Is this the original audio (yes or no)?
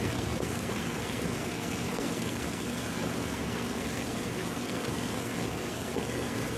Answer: no